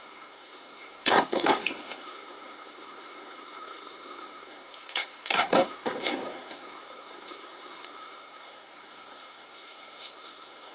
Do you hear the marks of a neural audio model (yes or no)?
yes